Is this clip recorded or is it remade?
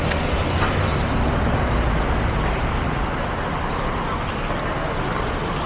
recorded